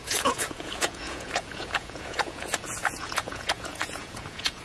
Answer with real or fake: fake